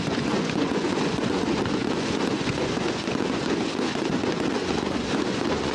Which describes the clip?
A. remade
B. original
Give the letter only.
A